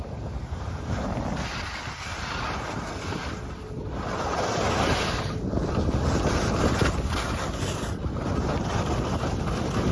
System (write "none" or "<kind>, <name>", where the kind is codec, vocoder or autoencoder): none